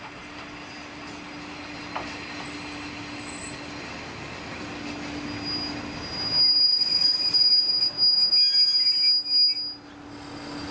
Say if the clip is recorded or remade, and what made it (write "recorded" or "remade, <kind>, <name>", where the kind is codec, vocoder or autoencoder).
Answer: recorded